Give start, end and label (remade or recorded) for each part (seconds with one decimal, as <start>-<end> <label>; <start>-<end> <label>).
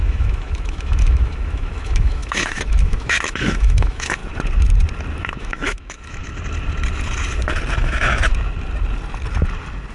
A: 0.0-4.2 remade; 4.2-5.2 recorded; 5.2-6.2 remade; 6.2-7.8 recorded; 7.8-8.3 remade; 8.3-9.9 recorded